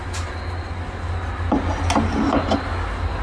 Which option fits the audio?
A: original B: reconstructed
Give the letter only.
A